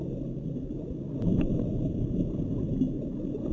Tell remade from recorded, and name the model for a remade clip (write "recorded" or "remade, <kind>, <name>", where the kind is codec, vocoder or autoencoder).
recorded